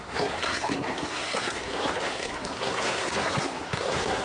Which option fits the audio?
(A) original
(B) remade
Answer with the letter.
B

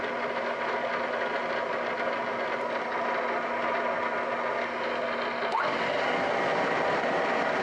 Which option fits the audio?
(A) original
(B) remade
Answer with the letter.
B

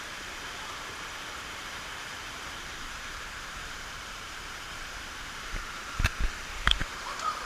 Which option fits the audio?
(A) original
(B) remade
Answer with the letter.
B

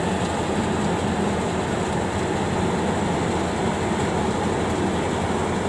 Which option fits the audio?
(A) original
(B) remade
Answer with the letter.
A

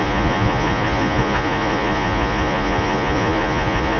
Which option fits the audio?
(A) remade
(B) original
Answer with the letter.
A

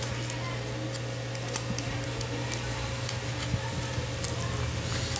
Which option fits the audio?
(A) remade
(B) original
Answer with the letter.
B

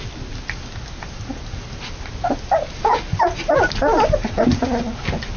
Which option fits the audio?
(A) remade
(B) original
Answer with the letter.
B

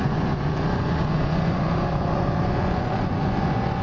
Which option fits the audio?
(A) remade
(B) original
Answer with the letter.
A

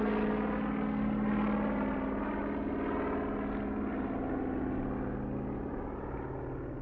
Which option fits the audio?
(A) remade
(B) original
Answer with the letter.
B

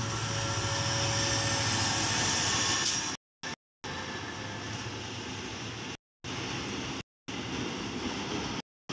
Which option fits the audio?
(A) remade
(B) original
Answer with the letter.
B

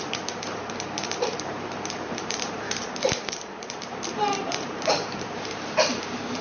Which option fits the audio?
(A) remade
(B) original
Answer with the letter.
A